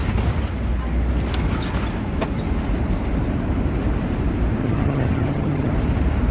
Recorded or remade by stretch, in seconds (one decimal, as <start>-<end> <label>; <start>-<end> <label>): 0.0-4.6 recorded; 4.6-5.7 remade; 5.7-6.3 recorded